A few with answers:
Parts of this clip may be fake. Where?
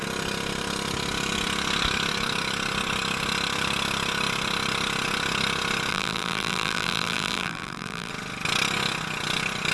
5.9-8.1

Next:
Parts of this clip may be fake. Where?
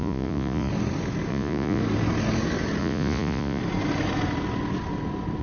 0.0-0.7; 1.3-1.8; 2.8-3.6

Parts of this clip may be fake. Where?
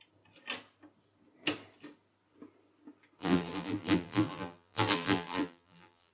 3.2-6.1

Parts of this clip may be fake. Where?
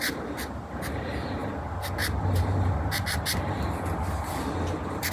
none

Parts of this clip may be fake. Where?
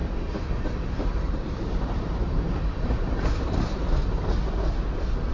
0.6-4.0